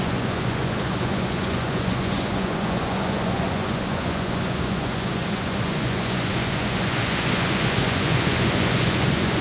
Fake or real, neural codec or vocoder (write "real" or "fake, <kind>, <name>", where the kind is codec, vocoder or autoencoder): fake, vocoder, Vocos